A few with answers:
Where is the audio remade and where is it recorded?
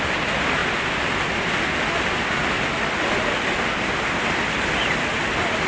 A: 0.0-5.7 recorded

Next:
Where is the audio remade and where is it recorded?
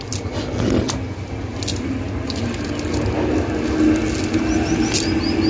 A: 0.0-5.5 recorded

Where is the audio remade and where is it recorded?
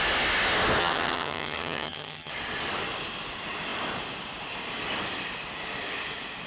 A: 0.0-0.8 recorded; 0.8-2.3 remade; 2.3-6.5 recorded